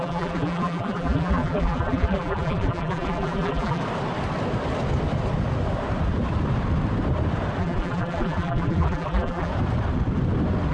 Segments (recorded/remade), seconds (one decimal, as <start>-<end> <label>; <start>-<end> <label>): 0.0-3.8 remade; 3.8-7.6 recorded; 7.6-9.5 remade; 9.5-10.7 recorded